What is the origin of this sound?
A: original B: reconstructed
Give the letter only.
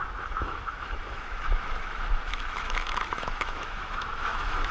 B